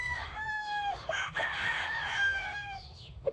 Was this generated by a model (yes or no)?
yes